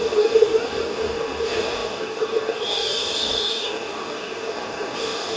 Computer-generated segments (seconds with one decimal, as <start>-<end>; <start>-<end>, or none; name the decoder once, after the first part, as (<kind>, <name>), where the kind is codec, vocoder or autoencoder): 0.0-5.4 (codec, DAC)

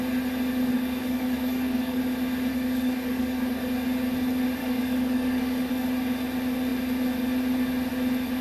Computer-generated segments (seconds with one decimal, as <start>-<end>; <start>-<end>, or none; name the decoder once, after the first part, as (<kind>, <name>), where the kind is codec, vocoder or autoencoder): 0.7-2.0 (codec, DAC); 2.5-3.6; 4.6-5.7

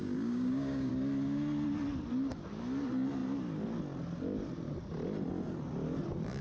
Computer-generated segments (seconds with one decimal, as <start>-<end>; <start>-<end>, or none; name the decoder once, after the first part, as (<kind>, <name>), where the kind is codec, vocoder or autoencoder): 0.0-0.9 (codec, DAC)

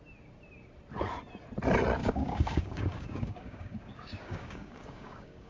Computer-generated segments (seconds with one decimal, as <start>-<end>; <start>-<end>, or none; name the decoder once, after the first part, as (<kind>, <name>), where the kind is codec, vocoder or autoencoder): 2.0-5.5 (codec, DAC)

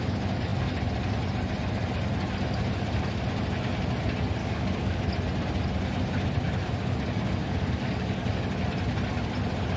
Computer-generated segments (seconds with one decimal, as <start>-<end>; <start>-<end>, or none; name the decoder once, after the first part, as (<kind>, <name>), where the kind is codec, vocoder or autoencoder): 4.4-5.0 (codec, DAC); 7.4-8.4

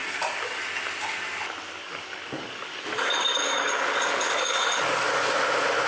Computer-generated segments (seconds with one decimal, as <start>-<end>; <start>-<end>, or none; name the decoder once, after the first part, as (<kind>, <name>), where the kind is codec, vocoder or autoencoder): 0.0-0.6 (codec, DAC); 1.8-5.3

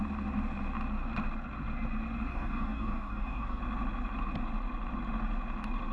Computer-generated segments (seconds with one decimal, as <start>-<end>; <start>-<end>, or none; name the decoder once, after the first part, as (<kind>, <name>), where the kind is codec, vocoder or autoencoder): 2.3-3.6 (codec, DAC)

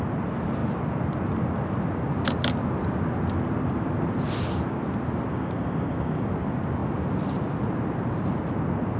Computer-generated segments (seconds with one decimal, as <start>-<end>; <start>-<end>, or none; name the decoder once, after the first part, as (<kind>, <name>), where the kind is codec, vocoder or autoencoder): 5.3-6.2 (codec, DAC)